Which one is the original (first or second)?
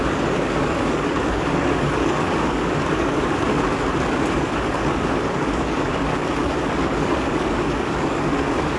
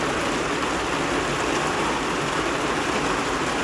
second